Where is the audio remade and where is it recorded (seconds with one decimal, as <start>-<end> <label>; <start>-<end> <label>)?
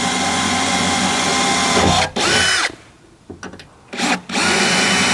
0.0-1.3 remade; 1.3-4.4 recorded; 4.4-5.1 remade